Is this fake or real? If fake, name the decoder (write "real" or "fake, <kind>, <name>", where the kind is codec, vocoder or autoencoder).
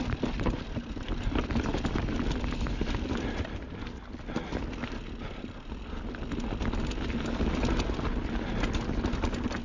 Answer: real